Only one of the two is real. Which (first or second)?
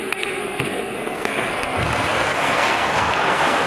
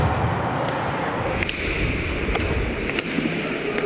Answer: second